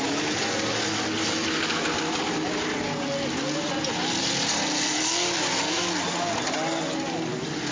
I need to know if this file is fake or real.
real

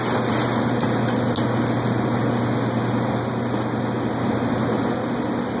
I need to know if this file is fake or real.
real